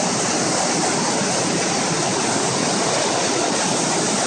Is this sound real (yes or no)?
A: yes